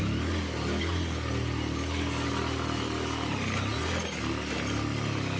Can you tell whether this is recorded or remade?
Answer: recorded